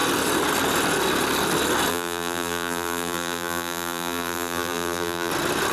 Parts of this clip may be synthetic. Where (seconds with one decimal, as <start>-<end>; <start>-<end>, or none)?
1.9-5.3